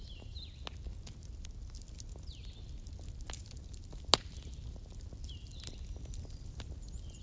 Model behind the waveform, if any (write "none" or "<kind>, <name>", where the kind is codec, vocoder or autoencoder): none